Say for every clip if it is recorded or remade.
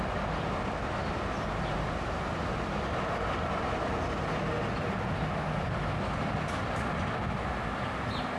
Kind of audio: recorded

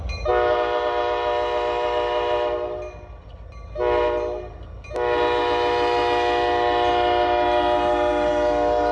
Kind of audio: recorded